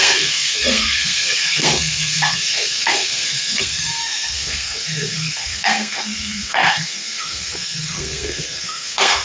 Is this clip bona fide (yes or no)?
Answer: no